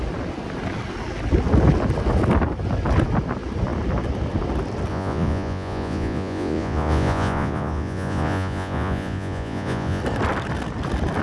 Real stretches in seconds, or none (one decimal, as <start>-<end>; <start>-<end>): 0.0-4.9; 10.0-11.2

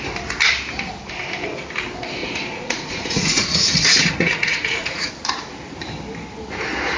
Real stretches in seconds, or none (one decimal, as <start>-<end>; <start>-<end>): 0.0-2.2; 5.1-7.0

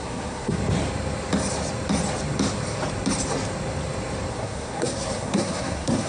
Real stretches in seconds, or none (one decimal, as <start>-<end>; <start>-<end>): 0.6-4.3

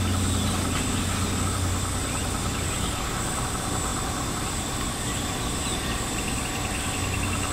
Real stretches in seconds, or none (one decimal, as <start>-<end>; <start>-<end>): 0.0-3.9; 6.4-7.5

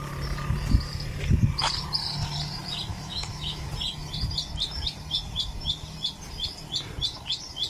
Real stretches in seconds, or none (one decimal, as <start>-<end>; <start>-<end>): 0.0-2.9; 3.7-7.7

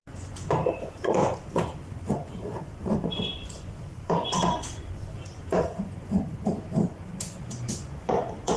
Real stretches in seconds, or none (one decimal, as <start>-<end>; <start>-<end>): none